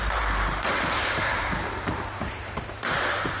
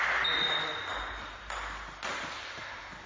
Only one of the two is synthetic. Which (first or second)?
first